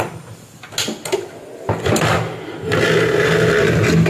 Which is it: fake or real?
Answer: real